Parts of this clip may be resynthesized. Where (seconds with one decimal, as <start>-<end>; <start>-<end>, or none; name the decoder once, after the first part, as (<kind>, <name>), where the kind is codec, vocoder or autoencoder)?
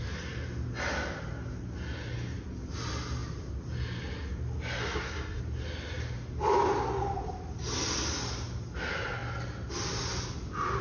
4.8-5.4 (codec, SNAC)